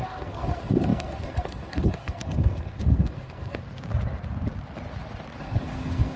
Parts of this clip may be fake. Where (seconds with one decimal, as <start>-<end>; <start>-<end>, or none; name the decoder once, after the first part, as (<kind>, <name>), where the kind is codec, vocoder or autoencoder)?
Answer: 0.0-3.6 (codec, SNAC); 5.4-6.2